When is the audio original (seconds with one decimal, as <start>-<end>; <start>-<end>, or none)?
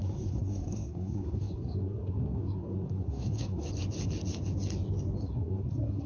3.7-5.2